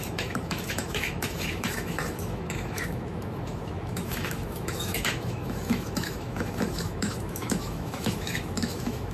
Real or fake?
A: fake